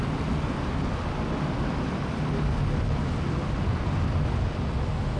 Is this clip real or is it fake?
real